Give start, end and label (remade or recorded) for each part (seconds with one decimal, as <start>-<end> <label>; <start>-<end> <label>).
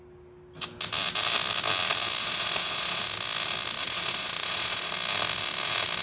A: 0.0-2.2 recorded; 2.2-3.0 remade; 3.0-3.8 recorded; 3.8-4.9 remade; 4.9-6.0 recorded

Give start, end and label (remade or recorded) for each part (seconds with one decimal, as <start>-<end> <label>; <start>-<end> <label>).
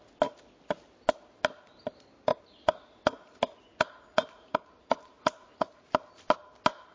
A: 0.0-2.3 recorded; 2.3-5.9 remade; 5.9-6.9 recorded